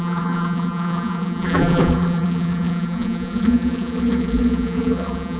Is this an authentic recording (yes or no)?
no